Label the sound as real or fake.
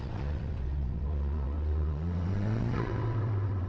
fake